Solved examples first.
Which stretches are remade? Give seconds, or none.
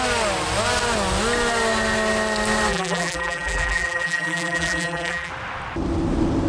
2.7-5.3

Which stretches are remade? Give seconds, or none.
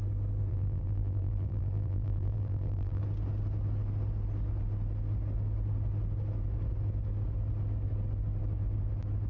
0.5-3.0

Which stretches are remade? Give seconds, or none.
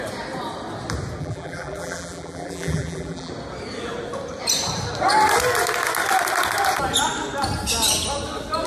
1.2-3.3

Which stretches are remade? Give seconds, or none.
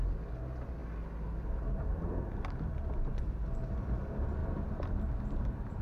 3.1-4.0; 4.4-5.8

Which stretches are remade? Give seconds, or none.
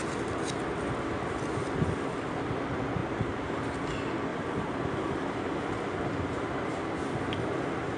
3.0-3.5; 4.3-6.8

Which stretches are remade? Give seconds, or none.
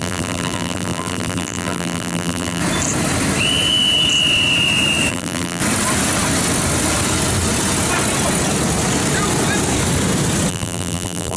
0.0-2.6; 5.1-5.6; 10.5-11.4